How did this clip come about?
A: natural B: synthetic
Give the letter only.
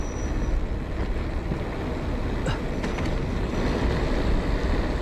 A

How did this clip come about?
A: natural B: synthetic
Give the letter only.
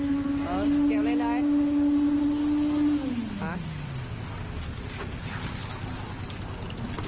A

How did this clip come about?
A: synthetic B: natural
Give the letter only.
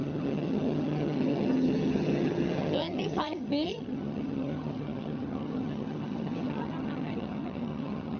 A